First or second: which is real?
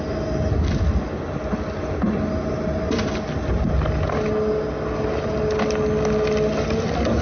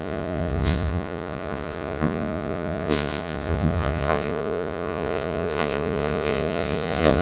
first